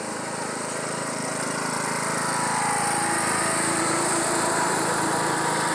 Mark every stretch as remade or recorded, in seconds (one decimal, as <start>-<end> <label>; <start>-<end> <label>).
0.0-1.2 remade; 1.2-3.7 recorded; 3.7-5.7 remade